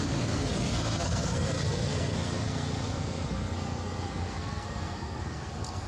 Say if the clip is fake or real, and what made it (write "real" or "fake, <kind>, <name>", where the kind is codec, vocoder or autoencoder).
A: fake, codec, SNAC